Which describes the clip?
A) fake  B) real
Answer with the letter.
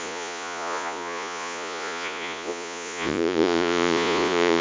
A